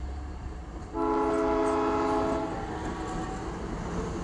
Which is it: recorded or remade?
recorded